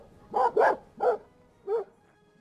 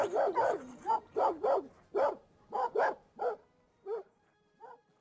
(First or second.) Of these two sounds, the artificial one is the second